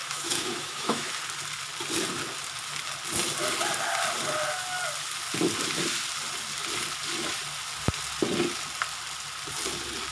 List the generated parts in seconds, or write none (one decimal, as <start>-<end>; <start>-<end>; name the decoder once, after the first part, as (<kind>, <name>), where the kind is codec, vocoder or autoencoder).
0.0-1.1 (autoencoder, DAC-VAE)